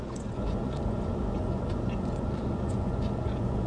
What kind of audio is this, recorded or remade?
remade